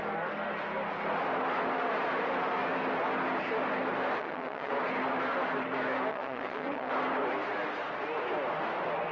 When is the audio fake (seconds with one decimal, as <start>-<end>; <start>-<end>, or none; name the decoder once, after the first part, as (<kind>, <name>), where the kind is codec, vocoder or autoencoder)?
4.2-4.7 (vocoder, WaveNeXt); 6.1-6.9